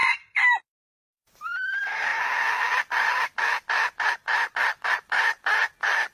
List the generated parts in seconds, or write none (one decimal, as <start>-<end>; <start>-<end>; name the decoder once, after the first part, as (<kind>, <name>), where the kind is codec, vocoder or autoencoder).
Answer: none